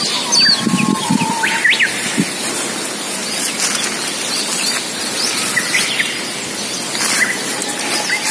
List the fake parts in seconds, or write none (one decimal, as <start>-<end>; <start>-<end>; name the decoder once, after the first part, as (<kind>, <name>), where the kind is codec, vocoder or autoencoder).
none